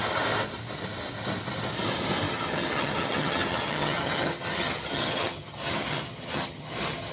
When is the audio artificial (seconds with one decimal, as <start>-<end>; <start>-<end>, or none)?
2.3-7.1

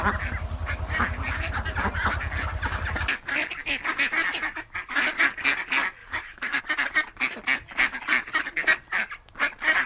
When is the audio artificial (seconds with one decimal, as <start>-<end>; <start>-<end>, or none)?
6.0-6.6

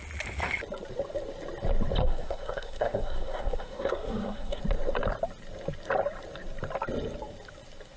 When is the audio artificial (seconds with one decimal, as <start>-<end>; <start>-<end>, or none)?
2.0-4.6

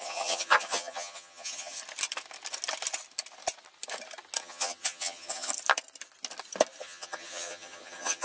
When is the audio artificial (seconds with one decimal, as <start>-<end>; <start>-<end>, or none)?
0.0-1.8; 4.4-5.5; 6.8-8.2

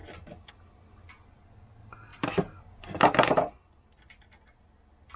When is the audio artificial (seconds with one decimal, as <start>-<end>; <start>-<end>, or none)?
none